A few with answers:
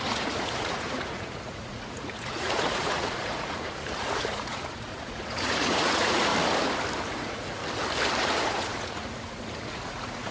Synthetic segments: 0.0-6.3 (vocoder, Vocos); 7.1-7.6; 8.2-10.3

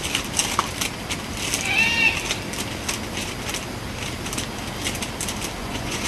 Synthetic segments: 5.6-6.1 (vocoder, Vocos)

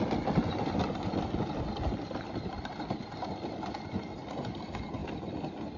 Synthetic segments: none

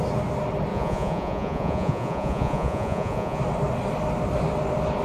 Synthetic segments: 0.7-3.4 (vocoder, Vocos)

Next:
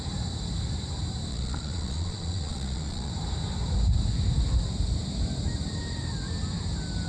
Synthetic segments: 1.3-3.1 (vocoder, Vocos)

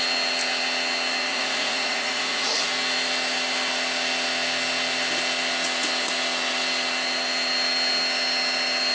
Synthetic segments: 1.3-2.7 (vocoder, Vocos)

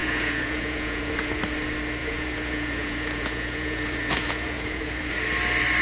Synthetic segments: 0.0-1.4 (vocoder, Vocos); 2.0-5.1